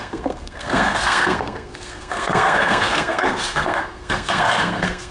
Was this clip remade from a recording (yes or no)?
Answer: yes